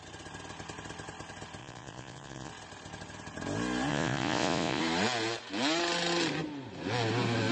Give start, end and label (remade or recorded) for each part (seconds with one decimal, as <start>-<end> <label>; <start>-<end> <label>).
0.0-1.6 recorded; 1.6-2.5 remade; 2.5-3.9 recorded; 3.9-4.8 remade; 4.8-7.5 recorded